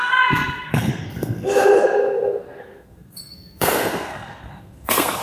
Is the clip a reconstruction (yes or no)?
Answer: yes